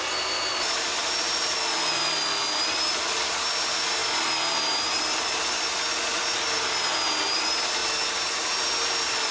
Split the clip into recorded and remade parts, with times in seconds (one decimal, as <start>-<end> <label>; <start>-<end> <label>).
0.0-0.5 recorded; 0.5-1.6 remade; 1.6-9.3 recorded